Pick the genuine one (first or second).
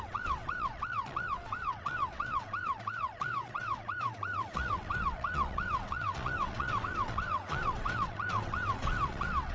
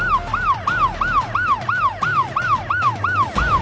second